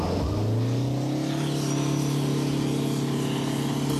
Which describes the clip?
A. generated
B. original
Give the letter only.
B